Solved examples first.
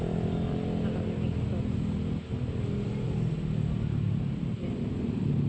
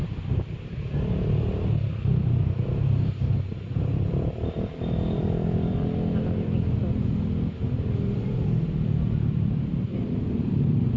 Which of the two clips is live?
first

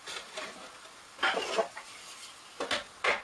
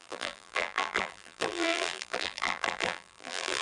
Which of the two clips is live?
first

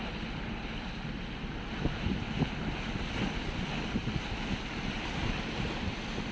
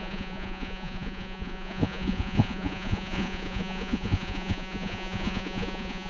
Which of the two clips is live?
first